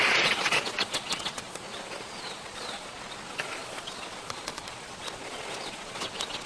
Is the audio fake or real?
fake